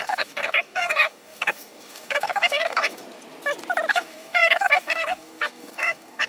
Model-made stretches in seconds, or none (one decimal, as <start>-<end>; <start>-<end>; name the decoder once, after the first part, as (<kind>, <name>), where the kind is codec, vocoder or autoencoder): 0.0-3.0 (codec, DAC); 3.9-6.3